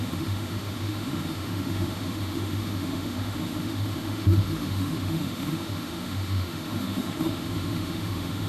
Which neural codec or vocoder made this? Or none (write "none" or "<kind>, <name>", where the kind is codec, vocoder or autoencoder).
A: autoencoder, DAC-VAE